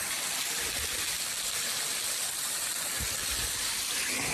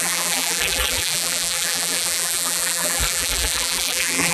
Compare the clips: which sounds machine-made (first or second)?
second